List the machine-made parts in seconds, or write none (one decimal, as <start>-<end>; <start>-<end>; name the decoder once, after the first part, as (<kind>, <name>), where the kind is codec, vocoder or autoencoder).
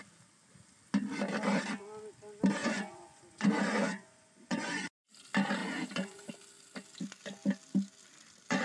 2.6-4.9 (vocoder, Vocos); 5.6-6.3